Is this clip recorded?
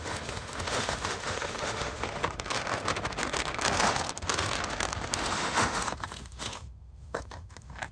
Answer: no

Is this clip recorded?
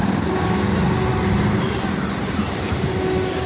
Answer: yes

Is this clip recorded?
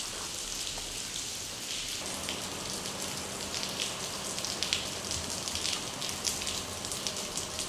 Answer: yes